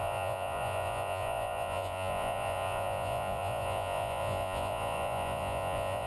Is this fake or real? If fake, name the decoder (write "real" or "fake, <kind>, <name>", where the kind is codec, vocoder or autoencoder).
fake, vocoder, Vocos